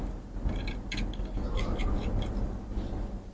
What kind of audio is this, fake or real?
real